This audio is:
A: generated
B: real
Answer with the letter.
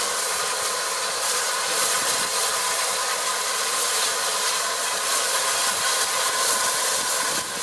B